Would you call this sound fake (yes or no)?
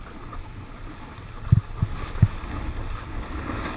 no